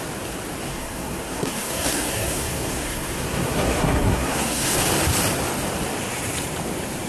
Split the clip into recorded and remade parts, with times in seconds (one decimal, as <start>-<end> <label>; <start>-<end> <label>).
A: 0.0-0.7 recorded; 0.7-4.7 remade; 4.7-7.1 recorded